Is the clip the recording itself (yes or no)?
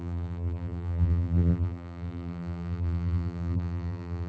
no